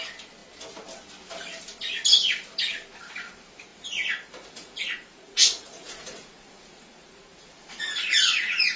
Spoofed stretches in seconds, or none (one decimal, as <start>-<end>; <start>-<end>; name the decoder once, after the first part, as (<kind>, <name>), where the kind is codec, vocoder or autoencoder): 3.7-8.8 (vocoder, Vocos)